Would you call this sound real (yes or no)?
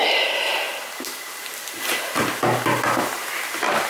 yes